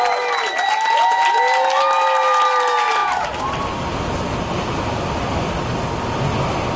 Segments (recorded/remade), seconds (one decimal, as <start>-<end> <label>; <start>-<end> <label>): 0.0-6.8 recorded